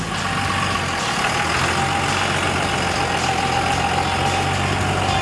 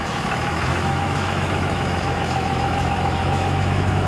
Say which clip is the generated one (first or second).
second